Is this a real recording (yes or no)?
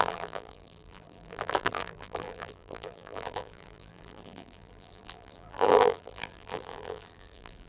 no